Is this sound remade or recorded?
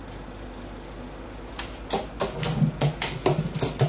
recorded